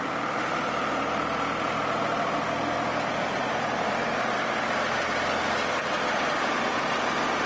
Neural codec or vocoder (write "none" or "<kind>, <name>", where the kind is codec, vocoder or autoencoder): none